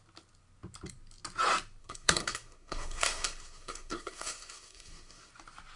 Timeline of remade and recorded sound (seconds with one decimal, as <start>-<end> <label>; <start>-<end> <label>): 0.0-1.8 recorded; 1.8-5.3 remade; 5.3-5.8 recorded